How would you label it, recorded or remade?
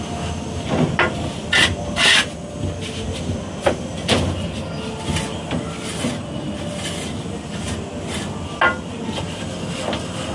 recorded